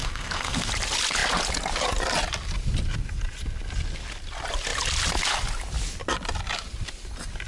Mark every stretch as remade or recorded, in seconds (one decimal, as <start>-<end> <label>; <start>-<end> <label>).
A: 0.0-0.7 remade; 0.7-7.5 recorded

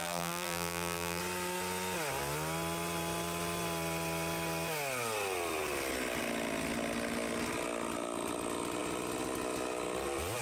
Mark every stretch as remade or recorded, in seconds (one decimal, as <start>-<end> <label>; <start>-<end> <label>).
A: 0.0-1.2 remade; 1.2-10.4 recorded

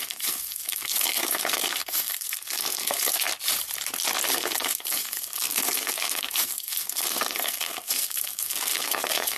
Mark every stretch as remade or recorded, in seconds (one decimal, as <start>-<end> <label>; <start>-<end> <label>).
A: 0.0-3.3 remade; 3.3-4.3 recorded; 4.3-9.4 remade

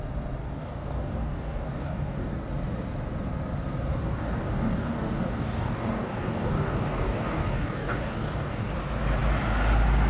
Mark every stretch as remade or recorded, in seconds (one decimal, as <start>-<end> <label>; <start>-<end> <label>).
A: 0.0-0.4 recorded; 0.4-2.3 remade; 2.3-3.9 recorded; 3.9-8.7 remade; 8.7-10.1 recorded